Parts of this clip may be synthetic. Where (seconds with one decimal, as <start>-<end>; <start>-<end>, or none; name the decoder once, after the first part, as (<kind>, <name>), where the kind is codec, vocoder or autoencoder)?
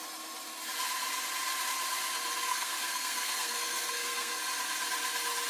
2.5-4.4 (codec, SNAC)